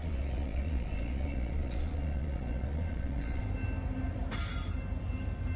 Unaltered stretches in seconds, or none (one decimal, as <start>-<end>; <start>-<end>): 3.4-5.6

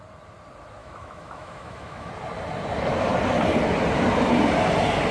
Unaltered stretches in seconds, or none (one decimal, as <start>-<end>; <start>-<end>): 0.0-0.8; 2.1-5.1

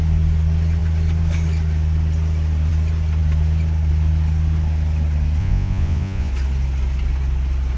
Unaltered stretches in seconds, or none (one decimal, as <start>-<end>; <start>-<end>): 0.0-5.4; 6.3-7.8

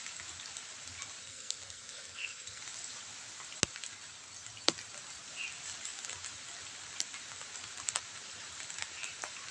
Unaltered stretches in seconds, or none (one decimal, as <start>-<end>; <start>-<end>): 0.0-1.2; 2.6-9.5

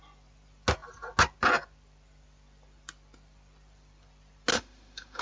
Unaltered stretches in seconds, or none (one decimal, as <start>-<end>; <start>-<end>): 0.0-4.5